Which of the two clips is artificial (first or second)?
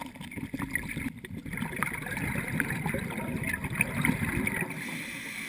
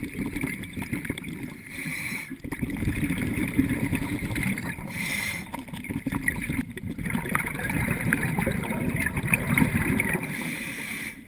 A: second